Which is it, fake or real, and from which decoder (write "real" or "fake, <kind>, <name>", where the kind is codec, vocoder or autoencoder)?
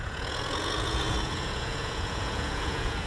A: fake, vocoder, Vocos